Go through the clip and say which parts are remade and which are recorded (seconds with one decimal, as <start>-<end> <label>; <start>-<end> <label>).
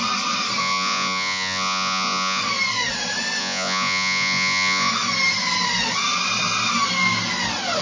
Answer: 0.0-0.6 recorded; 0.6-2.4 remade; 2.4-3.4 recorded; 3.4-4.9 remade; 4.9-7.8 recorded